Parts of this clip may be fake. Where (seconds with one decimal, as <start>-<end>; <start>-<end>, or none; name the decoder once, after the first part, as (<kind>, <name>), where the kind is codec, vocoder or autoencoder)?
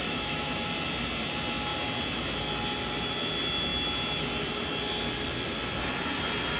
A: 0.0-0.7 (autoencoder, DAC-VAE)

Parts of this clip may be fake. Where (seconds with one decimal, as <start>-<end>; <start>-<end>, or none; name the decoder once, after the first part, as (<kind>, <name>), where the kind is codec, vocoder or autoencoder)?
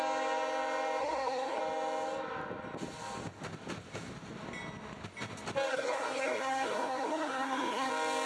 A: 1.0-1.6 (codec, SNAC); 5.7-7.9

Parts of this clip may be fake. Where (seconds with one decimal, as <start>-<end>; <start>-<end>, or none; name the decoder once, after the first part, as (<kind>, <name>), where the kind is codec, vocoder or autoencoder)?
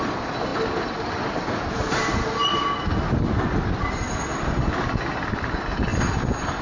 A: none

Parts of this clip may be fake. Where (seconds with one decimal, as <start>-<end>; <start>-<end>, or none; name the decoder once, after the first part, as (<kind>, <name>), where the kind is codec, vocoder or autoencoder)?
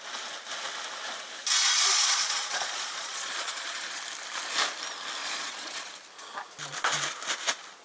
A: 1.6-4.0 (vocoder, Vocos); 5.2-5.9